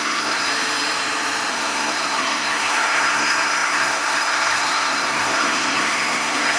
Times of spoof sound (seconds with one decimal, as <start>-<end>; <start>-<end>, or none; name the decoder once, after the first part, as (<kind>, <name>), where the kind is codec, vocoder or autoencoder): 0.0-0.5 (codec, SNAC); 1.5-6.6